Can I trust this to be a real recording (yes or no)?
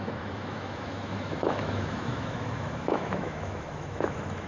no